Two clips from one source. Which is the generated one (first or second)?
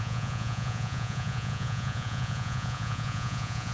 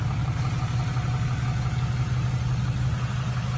first